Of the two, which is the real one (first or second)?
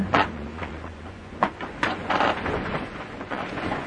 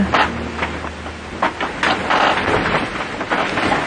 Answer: second